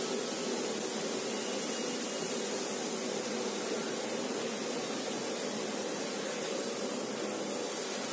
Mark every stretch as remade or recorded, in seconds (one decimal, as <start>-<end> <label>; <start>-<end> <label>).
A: 0.0-8.1 recorded